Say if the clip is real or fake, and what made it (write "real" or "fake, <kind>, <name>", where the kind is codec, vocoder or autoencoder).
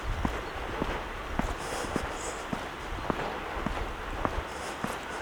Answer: real